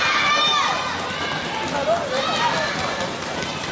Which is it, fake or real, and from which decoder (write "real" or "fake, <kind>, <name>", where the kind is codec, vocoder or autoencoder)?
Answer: real